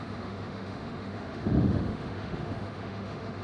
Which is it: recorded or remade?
remade